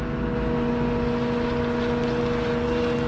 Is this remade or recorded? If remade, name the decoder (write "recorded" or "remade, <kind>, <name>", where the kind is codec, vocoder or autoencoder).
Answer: recorded